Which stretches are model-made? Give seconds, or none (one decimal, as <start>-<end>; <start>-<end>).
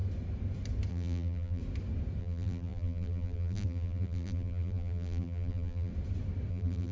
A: 0.9-1.6; 2.2-5.9; 6.5-6.9